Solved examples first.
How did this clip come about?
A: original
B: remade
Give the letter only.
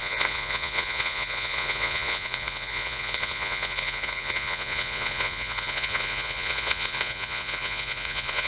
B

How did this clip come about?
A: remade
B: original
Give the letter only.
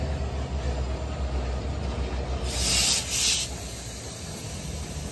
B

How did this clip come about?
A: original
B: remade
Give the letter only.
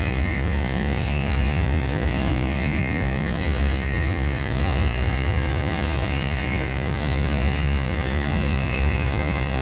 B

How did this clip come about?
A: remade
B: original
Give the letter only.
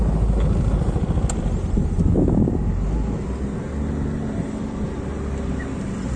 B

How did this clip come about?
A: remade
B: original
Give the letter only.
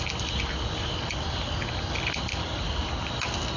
B